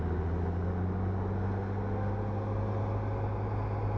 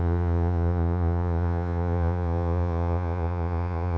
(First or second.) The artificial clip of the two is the second